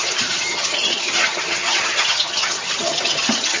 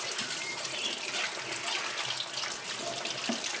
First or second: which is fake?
first